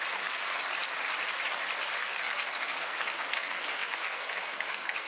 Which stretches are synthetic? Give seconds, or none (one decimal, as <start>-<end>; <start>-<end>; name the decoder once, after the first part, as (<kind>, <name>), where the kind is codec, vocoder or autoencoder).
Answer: 0.0-0.6 (codec, SNAC); 2.0-5.1